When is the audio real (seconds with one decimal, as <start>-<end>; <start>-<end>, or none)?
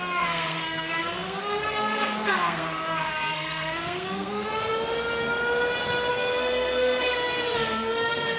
4.7-6.1